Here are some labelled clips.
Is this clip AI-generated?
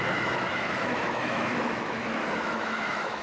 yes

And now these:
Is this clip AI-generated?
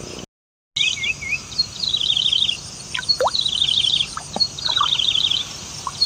no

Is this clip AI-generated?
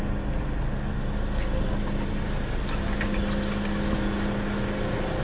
no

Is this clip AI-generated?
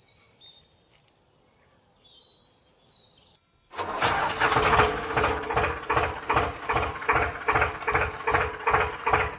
no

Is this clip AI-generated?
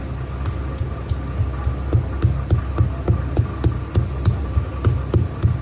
no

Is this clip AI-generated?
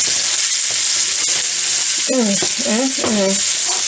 no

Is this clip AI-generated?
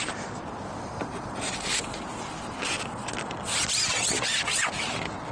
no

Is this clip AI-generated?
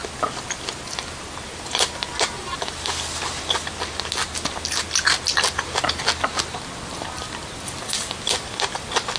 no